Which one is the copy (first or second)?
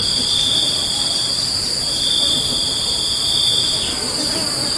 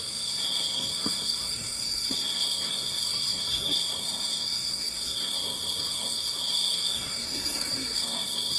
second